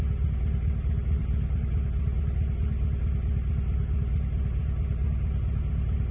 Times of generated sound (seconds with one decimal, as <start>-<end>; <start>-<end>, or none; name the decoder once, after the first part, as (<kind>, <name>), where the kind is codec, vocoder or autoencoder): none